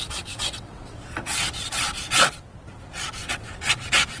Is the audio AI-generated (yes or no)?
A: yes